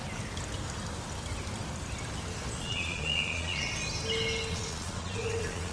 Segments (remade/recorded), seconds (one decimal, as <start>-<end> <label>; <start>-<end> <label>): 0.0-2.6 recorded; 2.6-3.7 remade; 3.7-4.5 recorded; 4.5-5.7 remade